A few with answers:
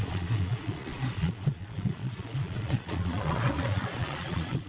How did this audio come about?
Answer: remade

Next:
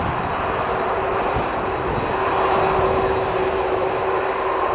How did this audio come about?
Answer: recorded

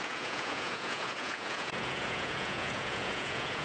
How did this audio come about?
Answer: remade